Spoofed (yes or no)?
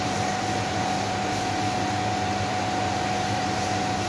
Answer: no